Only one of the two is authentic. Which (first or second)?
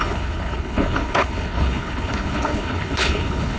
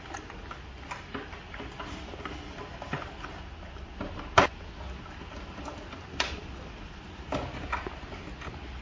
second